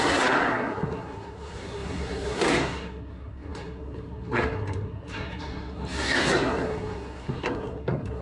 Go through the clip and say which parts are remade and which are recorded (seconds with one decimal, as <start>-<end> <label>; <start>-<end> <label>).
0.0-8.2 remade